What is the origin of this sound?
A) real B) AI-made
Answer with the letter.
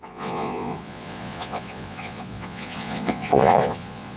B